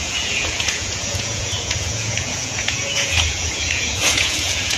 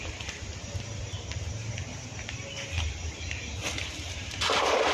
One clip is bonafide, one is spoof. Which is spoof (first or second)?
first